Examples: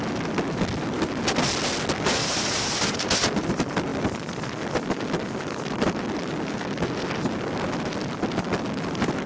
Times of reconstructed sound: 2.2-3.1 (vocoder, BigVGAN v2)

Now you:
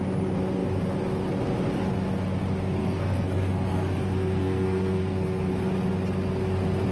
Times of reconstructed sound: 2.8-5.5 (codec, SNAC)

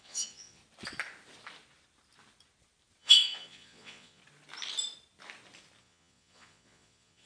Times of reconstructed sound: 0.0-0.6 (vocoder, Vocos); 3.0-4.2; 5.8-7.3

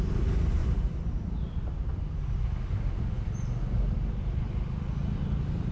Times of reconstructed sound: 0.6-3.6 (vocoder, BigVGAN v2)

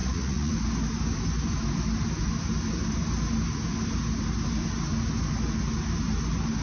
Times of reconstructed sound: 0.0-0.5 (vocoder, Vocos)

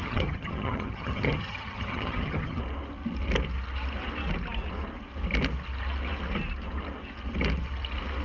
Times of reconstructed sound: 0.0-2.6 (vocoder, HiFi-GAN)

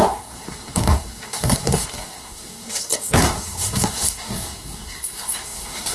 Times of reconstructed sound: 0.0-5.9 (codec, SNAC)

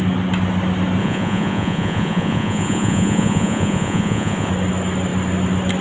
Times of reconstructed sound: 1.0-4.5 (vocoder, Vocos)